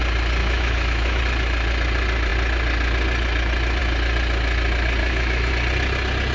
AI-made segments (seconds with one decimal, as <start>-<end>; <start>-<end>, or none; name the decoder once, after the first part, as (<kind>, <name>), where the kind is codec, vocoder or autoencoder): 0.4-1.2 (autoencoder, DAC-VAE); 5.0-5.5